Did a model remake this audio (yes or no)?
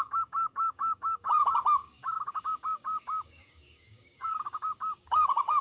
yes